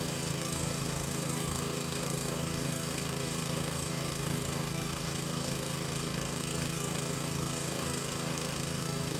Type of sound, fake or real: fake